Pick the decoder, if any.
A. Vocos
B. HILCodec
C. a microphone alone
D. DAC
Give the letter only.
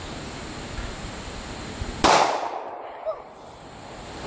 C